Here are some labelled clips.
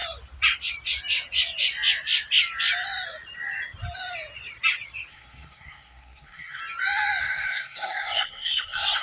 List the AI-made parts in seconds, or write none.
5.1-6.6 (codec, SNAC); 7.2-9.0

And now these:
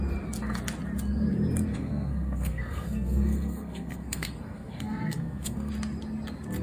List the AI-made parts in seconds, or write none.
1.7-5.7 (codec, SNAC)

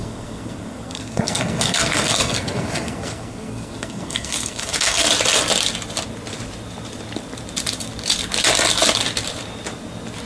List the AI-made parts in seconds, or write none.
0.0-5.1 (codec, SNAC)

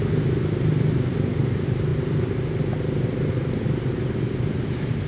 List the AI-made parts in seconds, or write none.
none

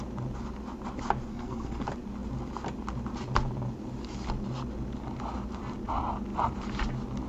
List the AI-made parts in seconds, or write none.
1.3-1.8 (codec, SNAC)